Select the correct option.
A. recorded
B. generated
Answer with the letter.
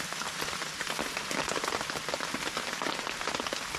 A